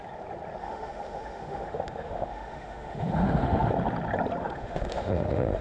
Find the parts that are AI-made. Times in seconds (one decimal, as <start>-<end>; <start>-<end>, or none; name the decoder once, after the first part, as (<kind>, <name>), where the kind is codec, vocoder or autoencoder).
0.6-3.7 (autoencoder, DAC-VAE); 4.4-5.6